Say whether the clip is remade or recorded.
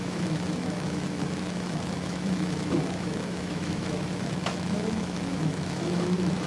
remade